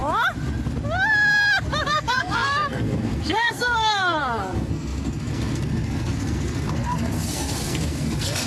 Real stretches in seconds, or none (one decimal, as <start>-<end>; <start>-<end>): 0.0-1.9